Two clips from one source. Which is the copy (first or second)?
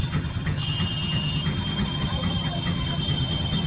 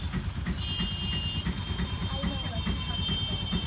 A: first